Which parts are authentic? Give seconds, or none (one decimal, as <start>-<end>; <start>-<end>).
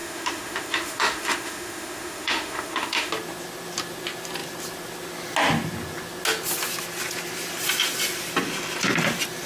3.1-9.5